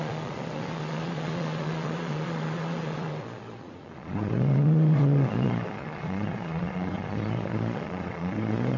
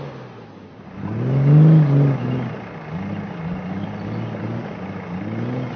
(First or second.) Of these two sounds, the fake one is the first